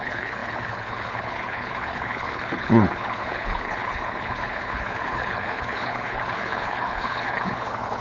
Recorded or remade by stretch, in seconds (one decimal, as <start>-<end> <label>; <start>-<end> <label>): 0.0-8.0 remade